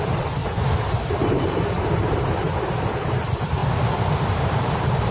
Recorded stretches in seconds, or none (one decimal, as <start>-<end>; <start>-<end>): 0.4-1.3; 3.6-4.2